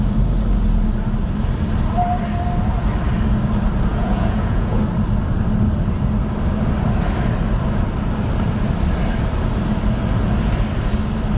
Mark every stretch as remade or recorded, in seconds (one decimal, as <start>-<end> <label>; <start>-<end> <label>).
0.0-3.9 recorded; 3.9-4.8 remade; 4.8-11.4 recorded